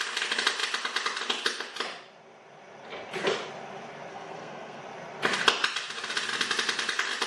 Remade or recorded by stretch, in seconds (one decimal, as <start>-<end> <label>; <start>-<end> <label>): 0.0-4.1 recorded; 4.1-4.8 remade; 4.8-7.3 recorded